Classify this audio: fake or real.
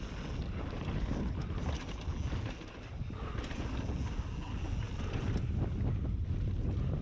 real